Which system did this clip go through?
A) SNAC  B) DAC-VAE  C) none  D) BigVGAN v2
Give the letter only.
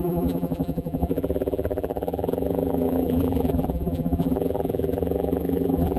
D